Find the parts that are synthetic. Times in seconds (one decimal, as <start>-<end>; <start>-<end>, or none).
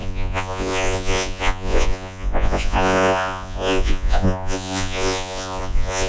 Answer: 0.0-6.1